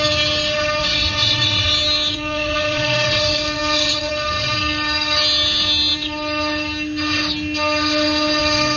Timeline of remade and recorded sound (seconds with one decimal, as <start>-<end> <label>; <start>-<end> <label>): 0.0-0.8 recorded; 0.8-1.7 remade; 1.7-2.1 recorded; 2.1-4.1 remade; 4.1-8.8 recorded